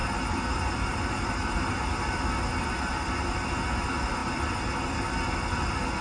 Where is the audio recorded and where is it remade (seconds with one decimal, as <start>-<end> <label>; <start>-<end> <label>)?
0.0-1.8 remade; 1.8-6.0 recorded